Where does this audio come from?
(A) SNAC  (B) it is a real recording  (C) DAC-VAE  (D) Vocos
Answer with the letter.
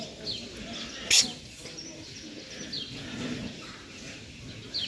B